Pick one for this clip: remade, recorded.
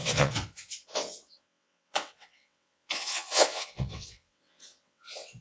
remade